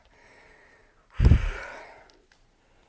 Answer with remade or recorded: recorded